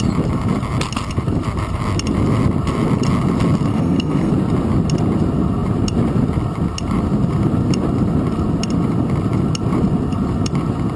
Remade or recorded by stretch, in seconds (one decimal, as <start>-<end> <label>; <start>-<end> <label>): 0.0-3.7 recorded; 3.7-4.3 remade; 4.3-11.0 recorded